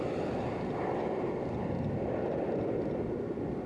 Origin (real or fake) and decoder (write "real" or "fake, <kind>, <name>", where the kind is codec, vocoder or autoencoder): real